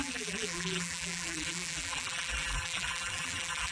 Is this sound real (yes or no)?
no